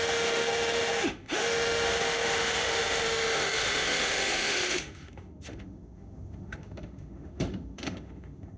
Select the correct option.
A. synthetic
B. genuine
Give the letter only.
A